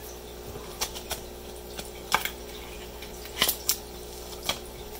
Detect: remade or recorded recorded